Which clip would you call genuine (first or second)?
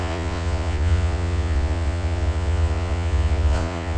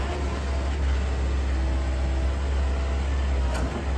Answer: second